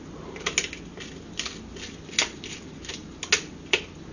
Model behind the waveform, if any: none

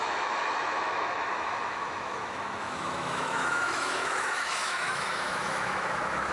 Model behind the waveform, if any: autoencoder, DAC-VAE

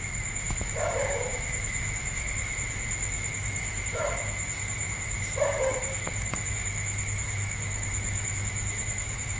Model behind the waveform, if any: autoencoder, DAC-VAE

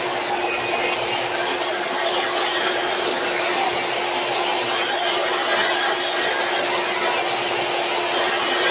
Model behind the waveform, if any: none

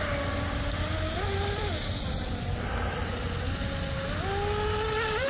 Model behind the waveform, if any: none